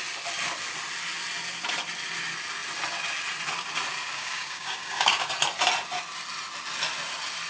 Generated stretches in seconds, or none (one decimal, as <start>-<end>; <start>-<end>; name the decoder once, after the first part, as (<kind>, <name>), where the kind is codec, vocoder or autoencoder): 4.1-5.3 (codec, DAC)